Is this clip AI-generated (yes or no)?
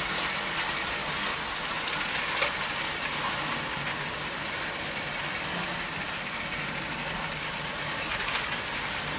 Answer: no